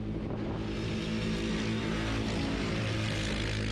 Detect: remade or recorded recorded